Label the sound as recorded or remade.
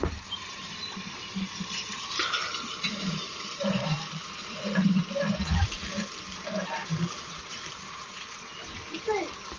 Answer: remade